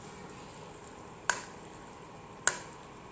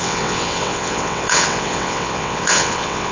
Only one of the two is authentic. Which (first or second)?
first